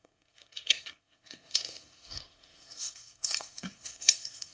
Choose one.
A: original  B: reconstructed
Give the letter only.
B